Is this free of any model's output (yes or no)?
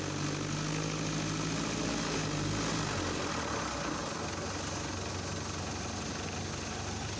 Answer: yes